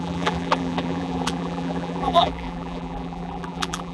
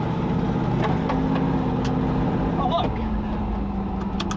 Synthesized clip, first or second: first